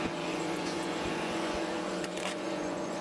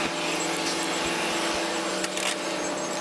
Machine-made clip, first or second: first